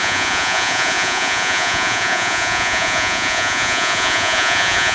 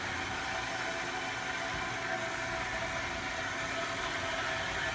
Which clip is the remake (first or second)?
first